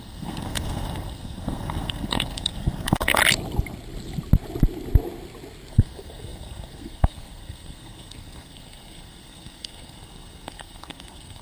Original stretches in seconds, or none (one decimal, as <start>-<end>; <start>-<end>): 3.2-5.7